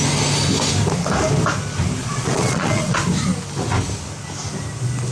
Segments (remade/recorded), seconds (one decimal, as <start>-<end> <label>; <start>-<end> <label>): 0.0-2.0 recorded; 2.0-3.0 remade; 3.0-5.1 recorded